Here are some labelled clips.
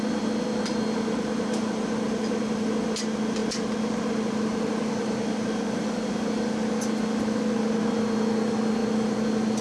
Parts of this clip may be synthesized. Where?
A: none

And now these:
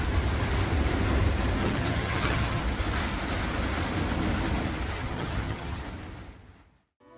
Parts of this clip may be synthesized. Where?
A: 1.6-2.6 (vocoder, HiFi-GAN); 5.0-5.8

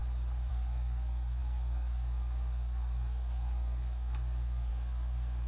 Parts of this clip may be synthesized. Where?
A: 0.5-5.5 (codec, SNAC)

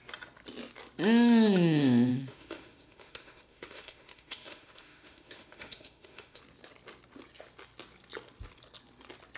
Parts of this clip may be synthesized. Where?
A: 2.1-6.4 (autoencoder, DAC-VAE)

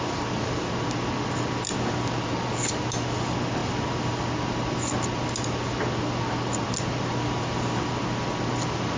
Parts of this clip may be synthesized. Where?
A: none

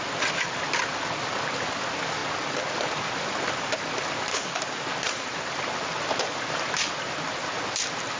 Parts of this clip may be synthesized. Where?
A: 4.3-4.8 (codec, DAC)

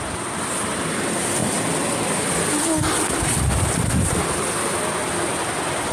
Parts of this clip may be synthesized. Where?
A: none